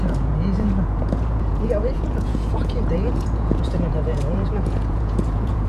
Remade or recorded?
remade